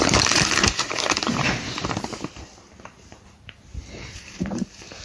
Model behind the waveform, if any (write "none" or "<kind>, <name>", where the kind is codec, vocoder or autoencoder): vocoder, BigVGAN v2